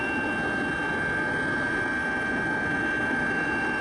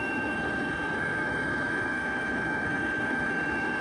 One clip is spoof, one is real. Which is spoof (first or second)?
second